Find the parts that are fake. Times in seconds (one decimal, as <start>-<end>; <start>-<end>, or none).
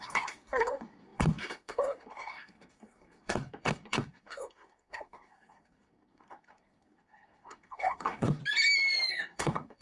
0.0-8.4; 9.1-9.8